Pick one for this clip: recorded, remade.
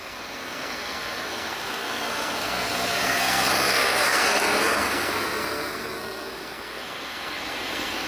remade